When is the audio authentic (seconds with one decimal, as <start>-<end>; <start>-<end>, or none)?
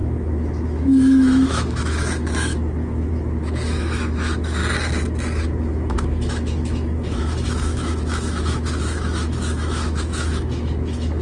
4.6-5.4